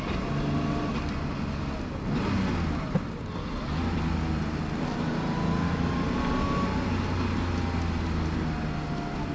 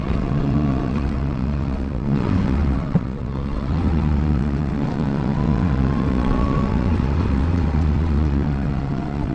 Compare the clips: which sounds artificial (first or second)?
second